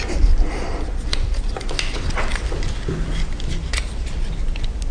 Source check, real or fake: real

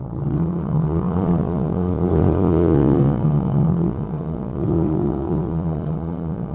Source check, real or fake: fake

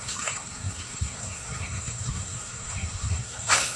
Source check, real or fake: fake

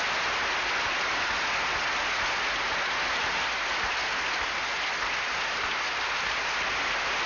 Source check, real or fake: real